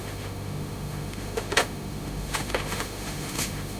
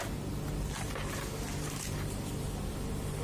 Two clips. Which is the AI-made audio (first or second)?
first